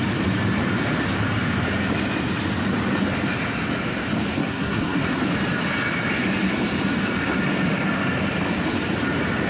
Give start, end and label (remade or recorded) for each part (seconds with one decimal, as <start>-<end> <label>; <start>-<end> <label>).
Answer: 0.0-4.4 recorded; 4.4-5.2 remade; 5.2-9.5 recorded